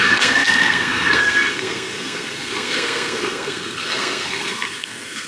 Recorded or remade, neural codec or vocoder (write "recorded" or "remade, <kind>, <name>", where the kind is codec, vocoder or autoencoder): remade, codec, SNAC